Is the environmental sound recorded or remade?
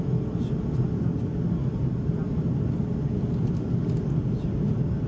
recorded